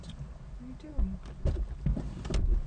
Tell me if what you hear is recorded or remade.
recorded